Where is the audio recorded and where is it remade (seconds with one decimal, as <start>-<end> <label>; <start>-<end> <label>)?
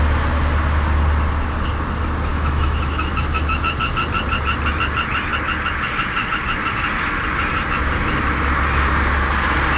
0.0-2.3 recorded; 2.3-3.7 remade; 3.7-9.8 recorded